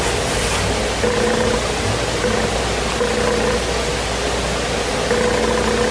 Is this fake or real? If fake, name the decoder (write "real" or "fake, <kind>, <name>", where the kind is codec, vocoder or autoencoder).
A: real